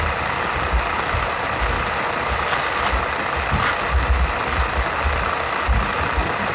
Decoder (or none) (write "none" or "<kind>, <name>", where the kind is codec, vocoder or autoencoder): none